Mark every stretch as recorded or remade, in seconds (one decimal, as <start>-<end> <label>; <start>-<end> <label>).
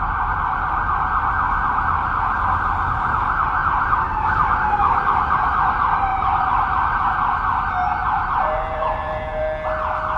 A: 0.0-3.6 recorded; 3.6-5.3 remade; 5.3-6.1 recorded; 6.1-7.1 remade; 7.1-8.0 recorded; 8.0-9.4 remade; 9.4-10.2 recorded